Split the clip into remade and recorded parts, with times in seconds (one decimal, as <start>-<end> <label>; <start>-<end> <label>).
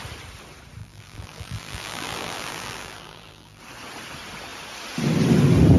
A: 0.0-0.8 recorded; 0.8-3.6 remade; 3.6-5.8 recorded